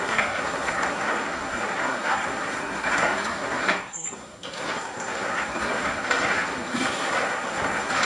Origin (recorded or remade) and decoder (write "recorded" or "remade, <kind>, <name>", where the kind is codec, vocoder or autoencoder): remade, codec, SNAC